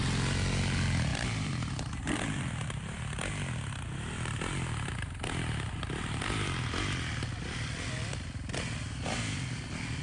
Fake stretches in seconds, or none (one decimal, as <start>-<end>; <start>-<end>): 1.1-2.0

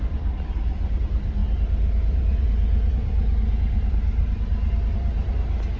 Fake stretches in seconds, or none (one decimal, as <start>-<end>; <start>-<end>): 0.0-5.8

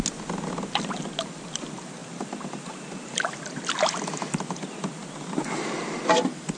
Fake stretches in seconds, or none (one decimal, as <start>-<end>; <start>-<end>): 2.0-4.3

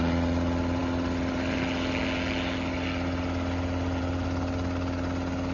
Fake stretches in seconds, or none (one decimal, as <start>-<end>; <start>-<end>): none

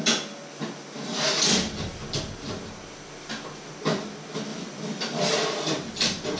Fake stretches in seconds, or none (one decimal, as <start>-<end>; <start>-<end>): 4.5-5.2

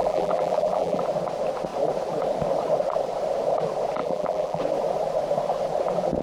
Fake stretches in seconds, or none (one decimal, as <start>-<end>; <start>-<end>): 0.0-1.0; 4.0-4.6